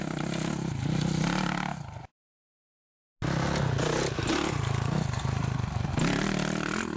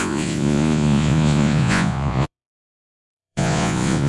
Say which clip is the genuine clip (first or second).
first